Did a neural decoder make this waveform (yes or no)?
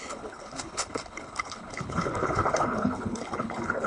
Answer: yes